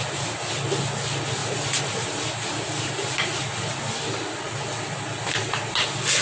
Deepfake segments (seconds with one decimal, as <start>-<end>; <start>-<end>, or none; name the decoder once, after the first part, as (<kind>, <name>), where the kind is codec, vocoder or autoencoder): 1.4-3.8 (vocoder, BigVGAN v2)